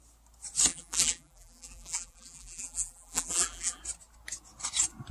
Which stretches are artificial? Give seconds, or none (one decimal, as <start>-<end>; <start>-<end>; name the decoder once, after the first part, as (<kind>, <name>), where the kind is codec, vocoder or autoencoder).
0.7-3.8 (vocoder, BigVGAN v2)